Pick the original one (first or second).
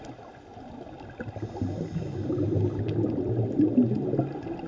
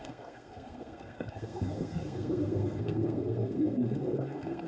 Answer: first